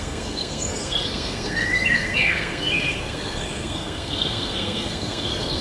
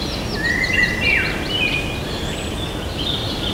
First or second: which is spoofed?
first